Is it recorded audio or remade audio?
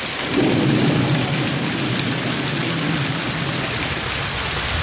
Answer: recorded